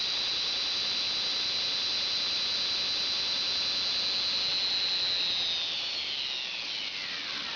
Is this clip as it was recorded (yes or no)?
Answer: yes